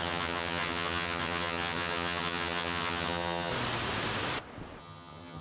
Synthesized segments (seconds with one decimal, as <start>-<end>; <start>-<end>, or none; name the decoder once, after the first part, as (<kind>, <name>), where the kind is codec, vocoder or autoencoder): 0.0-3.5 (vocoder, HiFi-GAN); 4.8-5.4